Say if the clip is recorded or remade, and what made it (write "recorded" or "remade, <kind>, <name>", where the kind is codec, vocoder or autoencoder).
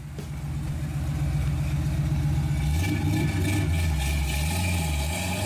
recorded